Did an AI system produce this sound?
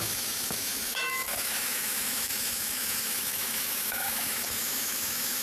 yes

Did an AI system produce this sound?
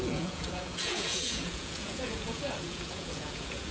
yes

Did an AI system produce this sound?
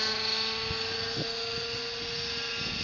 no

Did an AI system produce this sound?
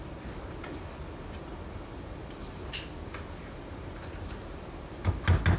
no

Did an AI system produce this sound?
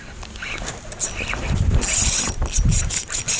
no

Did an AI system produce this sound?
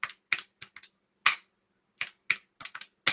no